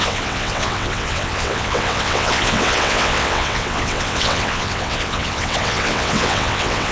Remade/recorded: remade